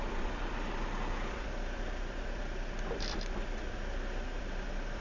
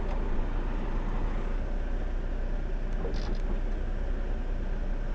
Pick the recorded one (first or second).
second